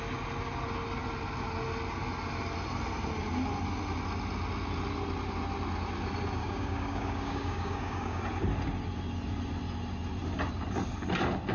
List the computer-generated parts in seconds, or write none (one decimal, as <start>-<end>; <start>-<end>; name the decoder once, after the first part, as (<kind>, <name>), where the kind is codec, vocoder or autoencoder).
6.4-8.2 (codec, DAC)